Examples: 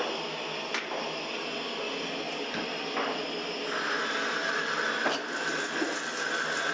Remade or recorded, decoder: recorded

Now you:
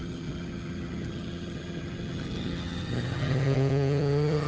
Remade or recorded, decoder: remade, vocoder, HiFi-GAN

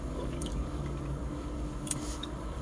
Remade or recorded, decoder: remade, codec, DAC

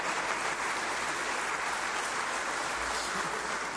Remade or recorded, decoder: recorded